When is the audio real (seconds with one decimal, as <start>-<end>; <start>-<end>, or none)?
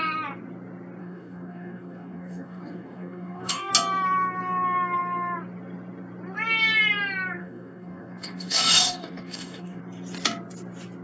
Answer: 0.0-1.0; 3.7-7.4; 9.8-11.0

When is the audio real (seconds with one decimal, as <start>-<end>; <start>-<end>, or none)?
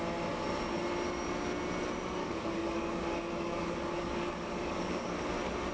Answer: 0.0-2.2; 5.3-5.7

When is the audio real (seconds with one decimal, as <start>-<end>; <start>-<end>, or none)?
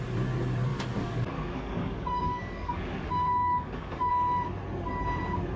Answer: 0.0-0.7; 4.1-5.6